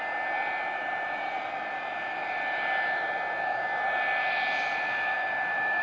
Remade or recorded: recorded